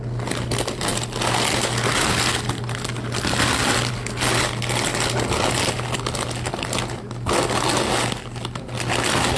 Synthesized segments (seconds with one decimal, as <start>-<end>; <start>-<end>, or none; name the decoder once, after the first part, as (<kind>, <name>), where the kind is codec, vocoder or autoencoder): none